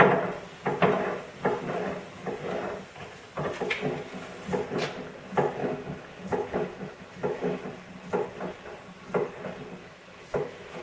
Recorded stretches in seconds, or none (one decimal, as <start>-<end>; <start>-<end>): 0.0-5.6; 7.6-9.8